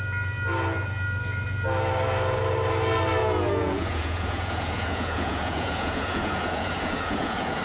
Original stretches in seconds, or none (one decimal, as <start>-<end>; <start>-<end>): 0.0-3.2